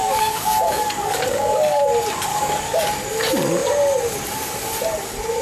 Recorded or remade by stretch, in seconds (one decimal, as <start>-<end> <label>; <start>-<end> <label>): 0.0-1.8 remade; 1.8-2.3 recorded; 2.3-2.8 remade; 2.8-5.4 recorded